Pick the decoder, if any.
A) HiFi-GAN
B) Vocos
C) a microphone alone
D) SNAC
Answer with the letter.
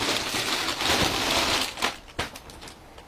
C